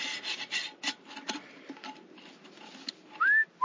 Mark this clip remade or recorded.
recorded